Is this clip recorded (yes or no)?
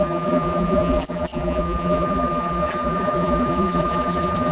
no